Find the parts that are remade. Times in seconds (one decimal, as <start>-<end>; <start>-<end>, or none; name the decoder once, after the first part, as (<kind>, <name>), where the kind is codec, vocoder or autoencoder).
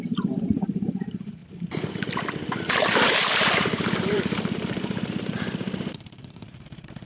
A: 0.0-1.4 (vocoder, BigVGAN v2); 1.9-7.1